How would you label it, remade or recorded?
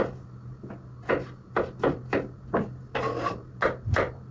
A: recorded